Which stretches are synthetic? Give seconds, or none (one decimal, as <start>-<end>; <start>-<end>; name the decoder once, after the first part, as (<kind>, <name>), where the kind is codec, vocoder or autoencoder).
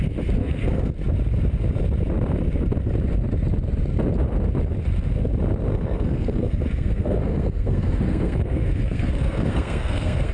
0.4-0.9 (codec, SNAC); 5.7-10.3